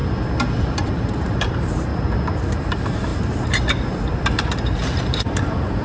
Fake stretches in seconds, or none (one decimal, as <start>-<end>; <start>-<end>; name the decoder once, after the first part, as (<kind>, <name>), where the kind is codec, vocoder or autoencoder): 0.6-1.9 (vocoder, BigVGAN v2); 2.4-3.1; 4.1-5.8